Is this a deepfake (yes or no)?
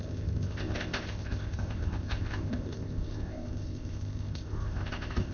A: yes